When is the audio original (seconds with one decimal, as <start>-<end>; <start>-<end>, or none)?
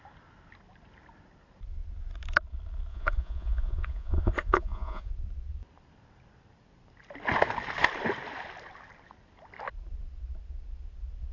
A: 0.0-2.9; 5.1-11.3